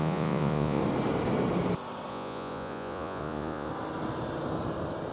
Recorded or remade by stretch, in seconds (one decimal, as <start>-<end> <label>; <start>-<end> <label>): 0.0-0.8 remade; 0.8-2.1 recorded; 2.1-3.7 remade; 3.7-5.1 recorded